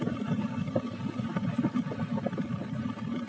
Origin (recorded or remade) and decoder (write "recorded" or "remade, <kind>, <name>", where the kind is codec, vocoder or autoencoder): recorded